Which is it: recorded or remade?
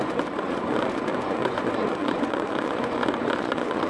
remade